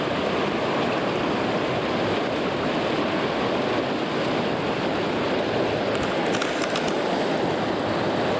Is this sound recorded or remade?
recorded